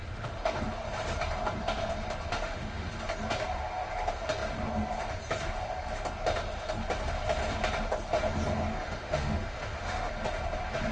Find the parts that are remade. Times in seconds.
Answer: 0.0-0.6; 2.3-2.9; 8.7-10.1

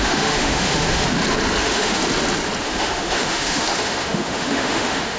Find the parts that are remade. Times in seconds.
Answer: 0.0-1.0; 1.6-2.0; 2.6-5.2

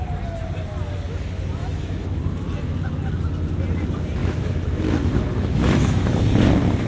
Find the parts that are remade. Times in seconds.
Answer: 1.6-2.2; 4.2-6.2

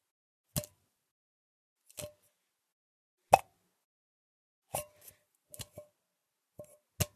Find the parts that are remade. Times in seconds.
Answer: none